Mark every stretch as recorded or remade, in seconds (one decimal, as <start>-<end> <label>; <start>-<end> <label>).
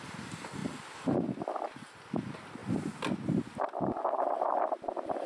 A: 0.0-5.3 recorded